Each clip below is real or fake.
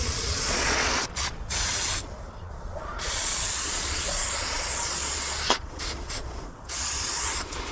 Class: fake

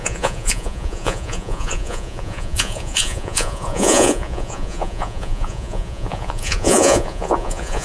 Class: fake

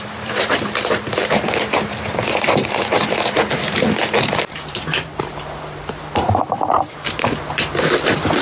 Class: fake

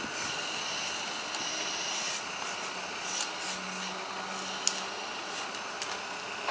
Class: real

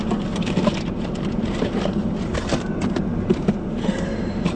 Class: fake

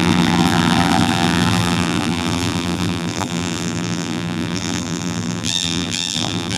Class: fake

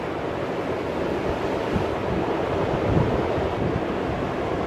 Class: real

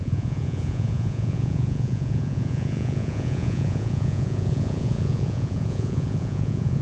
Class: fake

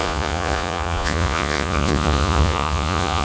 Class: fake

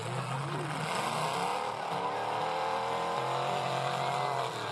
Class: real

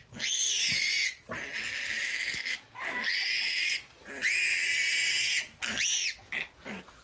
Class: real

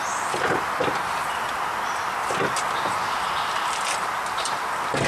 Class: real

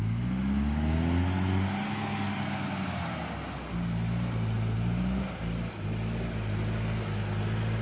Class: real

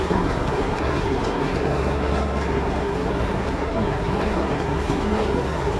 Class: fake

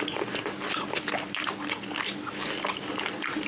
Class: real